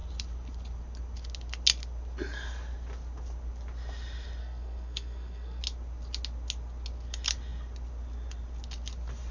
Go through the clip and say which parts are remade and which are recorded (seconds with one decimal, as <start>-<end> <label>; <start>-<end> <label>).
0.0-4.4 recorded; 4.4-5.6 remade; 5.6-9.3 recorded

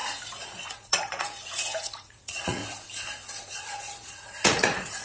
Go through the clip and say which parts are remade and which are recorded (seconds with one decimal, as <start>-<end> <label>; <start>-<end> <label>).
0.0-2.6 remade; 2.6-3.5 recorded; 3.5-5.0 remade

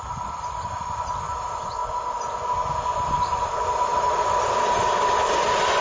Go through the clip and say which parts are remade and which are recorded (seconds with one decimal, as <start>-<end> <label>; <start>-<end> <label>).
0.0-5.8 recorded